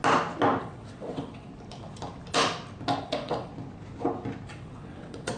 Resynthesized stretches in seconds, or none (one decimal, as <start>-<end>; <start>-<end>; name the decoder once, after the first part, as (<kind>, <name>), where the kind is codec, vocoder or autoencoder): 0.6-1.5 (vocoder, WaveNeXt); 3.0-3.5; 4.5-5.4